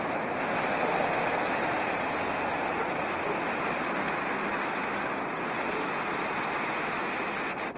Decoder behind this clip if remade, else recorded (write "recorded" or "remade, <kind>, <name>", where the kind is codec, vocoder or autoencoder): recorded